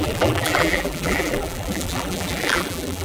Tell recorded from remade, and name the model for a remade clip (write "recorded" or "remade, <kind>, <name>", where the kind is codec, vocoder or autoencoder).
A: remade, vocoder, BigVGAN v2